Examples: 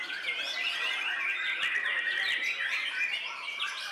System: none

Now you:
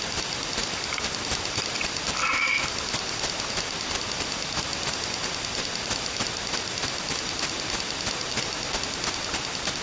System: none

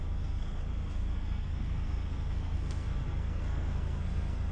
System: codec, SNAC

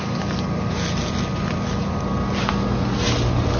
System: none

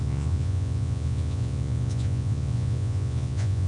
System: vocoder, Vocos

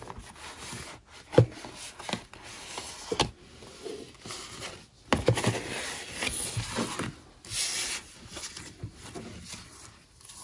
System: none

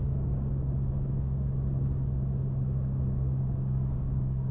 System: codec, DAC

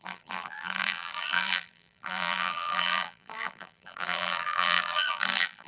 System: vocoder, BigVGAN v2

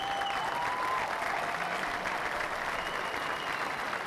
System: none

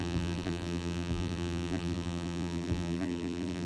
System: vocoder, BigVGAN v2